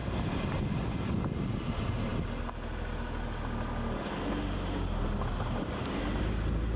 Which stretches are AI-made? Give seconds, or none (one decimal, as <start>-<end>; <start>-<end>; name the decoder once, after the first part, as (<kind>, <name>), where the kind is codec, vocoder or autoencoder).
none